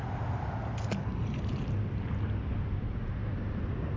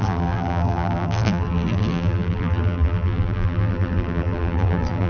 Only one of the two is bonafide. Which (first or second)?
first